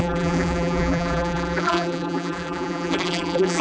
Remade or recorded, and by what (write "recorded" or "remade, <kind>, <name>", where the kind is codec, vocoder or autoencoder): remade, vocoder, BigVGAN v2